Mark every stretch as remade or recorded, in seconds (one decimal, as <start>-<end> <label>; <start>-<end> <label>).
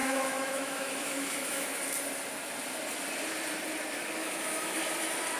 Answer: 0.0-1.8 remade; 1.8-4.2 recorded; 4.2-4.8 remade; 4.8-5.4 recorded